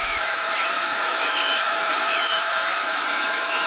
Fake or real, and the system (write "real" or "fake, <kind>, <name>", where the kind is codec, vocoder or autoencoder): fake, autoencoder, DAC-VAE